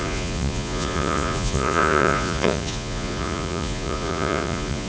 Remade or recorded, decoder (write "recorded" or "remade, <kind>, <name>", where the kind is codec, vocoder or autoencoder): remade, vocoder, Vocos